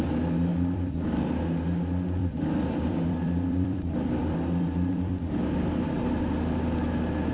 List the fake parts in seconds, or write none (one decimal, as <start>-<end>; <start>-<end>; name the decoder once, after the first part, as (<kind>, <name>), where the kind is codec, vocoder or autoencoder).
0.5-1.2 (vocoder, BigVGAN v2); 2.2-5.7